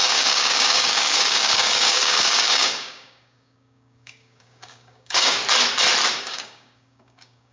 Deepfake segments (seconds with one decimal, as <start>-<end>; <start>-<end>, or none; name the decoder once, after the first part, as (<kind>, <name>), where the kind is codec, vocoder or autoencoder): 0.0-5.4 (codec, DAC); 6.1-7.5